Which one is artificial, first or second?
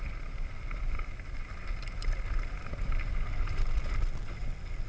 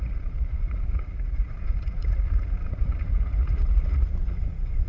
second